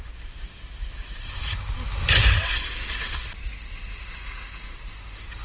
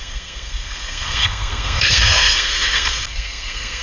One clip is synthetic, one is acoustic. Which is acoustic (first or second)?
first